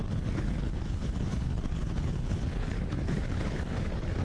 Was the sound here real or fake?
fake